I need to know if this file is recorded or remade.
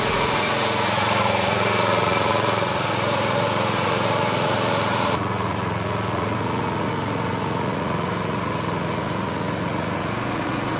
remade